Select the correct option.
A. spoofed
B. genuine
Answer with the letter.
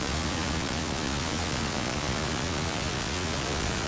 A